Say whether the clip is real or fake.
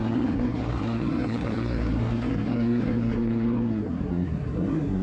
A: fake